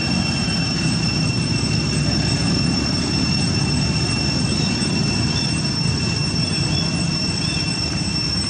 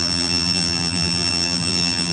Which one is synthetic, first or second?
second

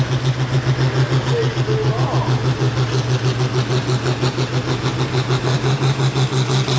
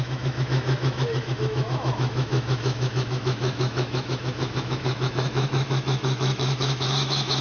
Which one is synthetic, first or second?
second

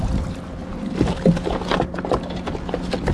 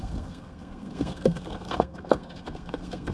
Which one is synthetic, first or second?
second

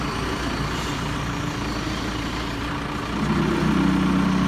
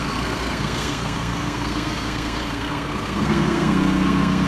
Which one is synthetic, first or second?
second